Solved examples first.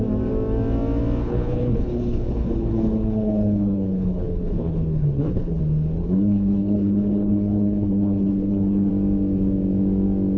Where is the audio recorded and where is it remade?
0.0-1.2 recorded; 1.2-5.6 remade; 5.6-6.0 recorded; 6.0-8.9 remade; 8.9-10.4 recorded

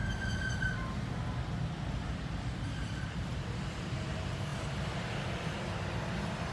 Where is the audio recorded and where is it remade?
0.0-6.5 remade

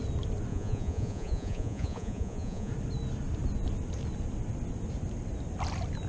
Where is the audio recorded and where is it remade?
0.0-0.5 recorded; 0.5-2.7 remade; 2.7-6.1 recorded

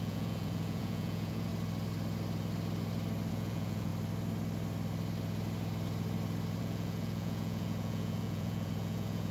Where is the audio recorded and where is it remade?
0.0-1.5 remade; 1.5-3.3 recorded; 3.3-3.9 remade; 3.9-6.6 recorded; 6.6-9.3 remade

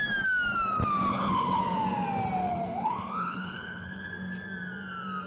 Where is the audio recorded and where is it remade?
0.0-1.1 recorded; 1.1-1.6 remade; 1.6-2.4 recorded; 2.4-4.1 remade; 4.1-5.3 recorded

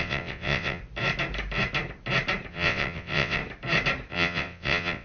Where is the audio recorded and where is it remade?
0.0-0.8 remade; 0.8-2.5 recorded; 2.5-3.4 remade; 3.4-4.1 recorded; 4.1-5.0 remade

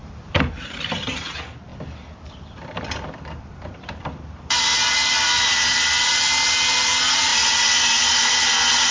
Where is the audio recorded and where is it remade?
0.0-0.5 remade; 0.5-1.7 recorded; 1.7-6.1 remade; 6.1-7.3 recorded; 7.3-7.9 remade; 7.9-8.9 recorded

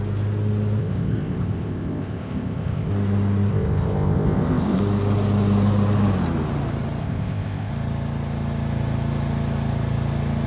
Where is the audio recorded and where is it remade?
0.0-0.8 recorded; 0.8-2.9 remade; 2.9-3.5 recorded; 3.5-4.8 remade; 4.8-7.0 recorded; 7.0-7.7 remade; 7.7-10.5 recorded